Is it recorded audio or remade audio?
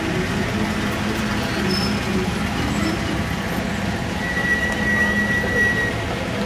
recorded